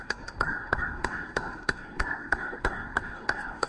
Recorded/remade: remade